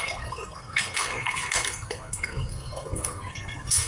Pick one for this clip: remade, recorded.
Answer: remade